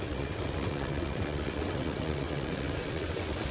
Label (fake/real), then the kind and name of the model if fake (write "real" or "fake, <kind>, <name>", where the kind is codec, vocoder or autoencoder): fake, vocoder, WaveNeXt